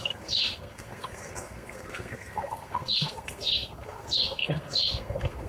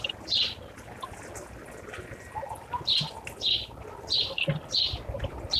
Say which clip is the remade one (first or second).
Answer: first